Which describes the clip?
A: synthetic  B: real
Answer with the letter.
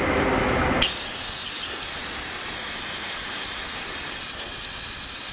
B